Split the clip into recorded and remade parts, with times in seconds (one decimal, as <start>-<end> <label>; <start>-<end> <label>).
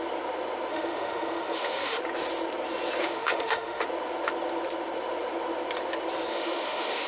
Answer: 0.0-0.7 recorded; 0.7-2.0 remade; 2.0-3.0 recorded; 3.0-3.8 remade; 3.8-6.3 recorded; 6.3-7.1 remade